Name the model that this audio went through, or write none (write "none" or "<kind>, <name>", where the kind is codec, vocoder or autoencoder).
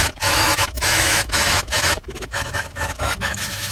autoencoder, DAC-VAE